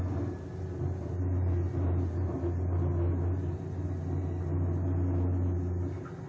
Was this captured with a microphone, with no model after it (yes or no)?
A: yes